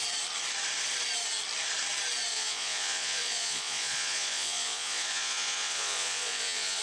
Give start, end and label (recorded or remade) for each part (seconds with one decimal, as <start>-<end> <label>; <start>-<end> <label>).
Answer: 0.0-2.3 recorded; 2.3-6.8 remade